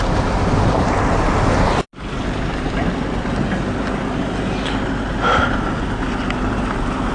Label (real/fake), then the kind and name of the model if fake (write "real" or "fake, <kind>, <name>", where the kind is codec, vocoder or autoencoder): real